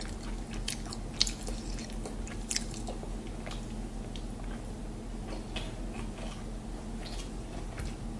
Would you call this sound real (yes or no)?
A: yes